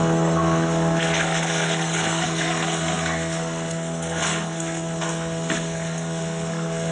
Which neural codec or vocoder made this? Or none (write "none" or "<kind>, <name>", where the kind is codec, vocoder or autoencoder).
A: codec, SNAC